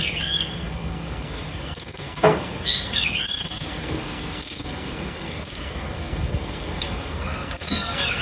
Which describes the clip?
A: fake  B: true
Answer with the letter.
A